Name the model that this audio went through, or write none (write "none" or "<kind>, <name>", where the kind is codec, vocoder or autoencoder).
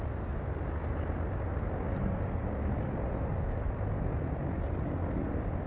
none